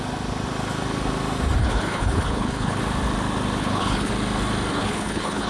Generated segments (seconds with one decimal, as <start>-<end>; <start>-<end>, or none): 1.6-2.8; 3.6-4.1; 4.7-5.5